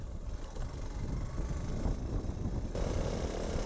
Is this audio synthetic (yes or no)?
no